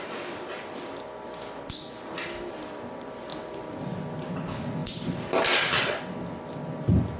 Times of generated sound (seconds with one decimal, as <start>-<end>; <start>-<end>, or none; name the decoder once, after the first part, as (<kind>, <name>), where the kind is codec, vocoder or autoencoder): 3.3-4.0 (vocoder, BigVGAN v2); 4.8-6.0